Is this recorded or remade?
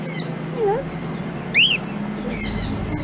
recorded